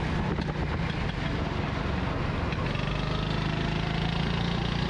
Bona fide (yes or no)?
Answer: yes